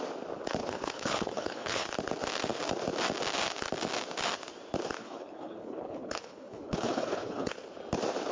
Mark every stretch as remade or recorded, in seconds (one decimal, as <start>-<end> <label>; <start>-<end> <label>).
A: 0.0-0.6 recorded; 0.6-1.9 remade; 1.9-5.0 recorded; 5.0-7.5 remade; 7.5-8.3 recorded